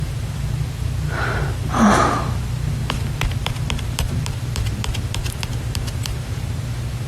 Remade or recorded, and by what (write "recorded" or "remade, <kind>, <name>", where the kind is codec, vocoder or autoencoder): remade, vocoder, BigVGAN v2